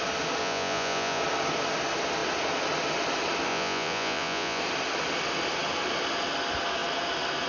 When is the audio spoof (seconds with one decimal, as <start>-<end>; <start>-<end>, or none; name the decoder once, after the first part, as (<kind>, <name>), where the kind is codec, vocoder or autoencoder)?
0.4-1.2 (vocoder, Vocos); 3.5-4.6